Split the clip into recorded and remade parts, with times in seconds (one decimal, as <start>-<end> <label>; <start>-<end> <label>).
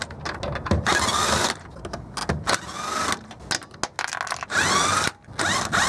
0.0-5.9 recorded